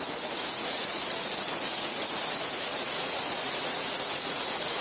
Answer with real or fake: fake